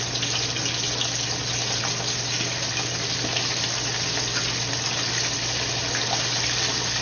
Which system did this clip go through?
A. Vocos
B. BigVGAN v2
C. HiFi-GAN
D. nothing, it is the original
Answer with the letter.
D